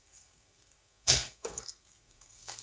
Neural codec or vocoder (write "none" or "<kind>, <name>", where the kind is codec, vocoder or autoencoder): codec, SNAC